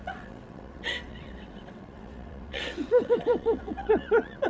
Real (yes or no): no